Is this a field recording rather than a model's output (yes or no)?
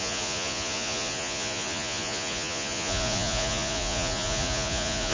no